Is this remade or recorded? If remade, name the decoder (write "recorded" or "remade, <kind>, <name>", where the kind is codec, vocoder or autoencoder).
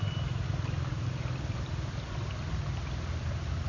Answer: recorded